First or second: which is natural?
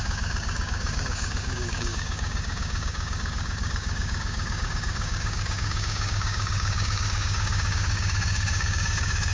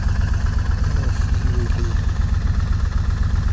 second